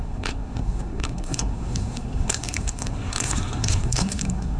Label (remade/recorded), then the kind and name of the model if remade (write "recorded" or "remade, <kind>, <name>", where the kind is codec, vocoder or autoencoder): remade, codec, SNAC